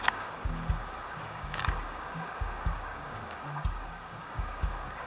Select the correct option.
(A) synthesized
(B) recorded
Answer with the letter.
A